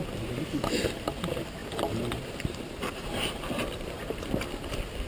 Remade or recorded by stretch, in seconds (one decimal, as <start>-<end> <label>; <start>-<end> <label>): 0.0-5.1 recorded